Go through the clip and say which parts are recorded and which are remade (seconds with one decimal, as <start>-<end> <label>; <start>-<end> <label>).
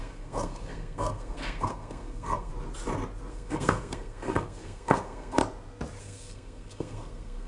0.0-2.5 remade; 2.5-3.3 recorded; 3.3-5.4 remade; 5.4-6.0 recorded; 6.0-7.5 remade